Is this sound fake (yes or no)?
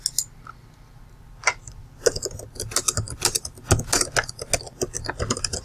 no